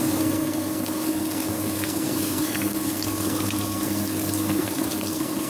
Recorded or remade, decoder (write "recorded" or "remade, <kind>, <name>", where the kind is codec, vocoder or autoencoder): remade, codec, SNAC